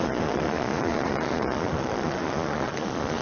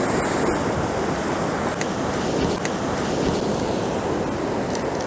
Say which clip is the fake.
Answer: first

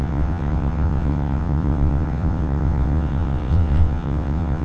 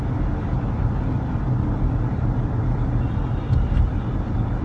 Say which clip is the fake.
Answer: first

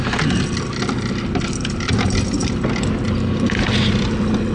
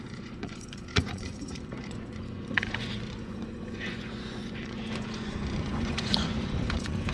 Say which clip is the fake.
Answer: second